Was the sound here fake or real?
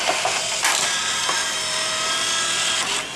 real